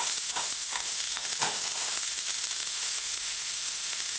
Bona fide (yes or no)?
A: no